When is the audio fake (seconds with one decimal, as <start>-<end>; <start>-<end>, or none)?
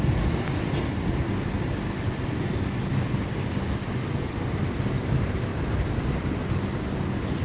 5.5-6.4